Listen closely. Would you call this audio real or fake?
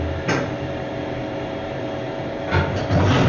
fake